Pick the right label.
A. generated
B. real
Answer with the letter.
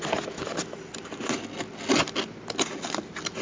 B